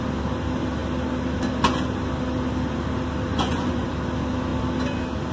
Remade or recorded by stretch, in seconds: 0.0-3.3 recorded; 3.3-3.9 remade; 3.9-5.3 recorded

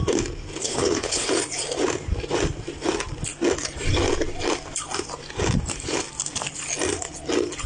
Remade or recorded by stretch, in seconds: 0.0-0.6 recorded; 0.6-1.3 remade; 1.3-7.7 recorded

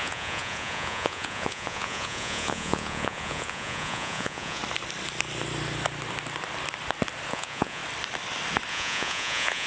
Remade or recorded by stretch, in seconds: 0.0-4.6 remade; 4.6-7.3 recorded; 7.3-7.8 remade; 7.8-8.7 recorded; 8.7-9.7 remade